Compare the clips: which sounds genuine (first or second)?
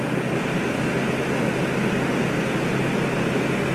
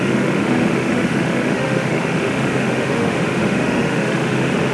first